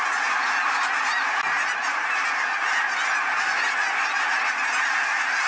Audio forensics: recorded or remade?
recorded